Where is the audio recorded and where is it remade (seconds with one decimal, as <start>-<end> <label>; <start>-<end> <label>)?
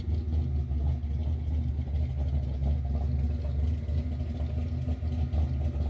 0.0-5.9 recorded